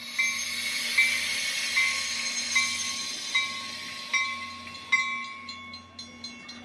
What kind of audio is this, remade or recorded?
recorded